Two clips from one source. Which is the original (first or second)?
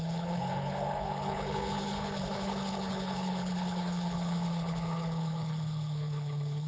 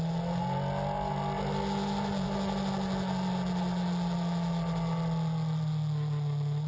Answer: second